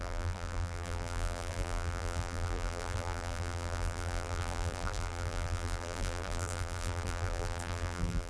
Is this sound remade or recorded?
remade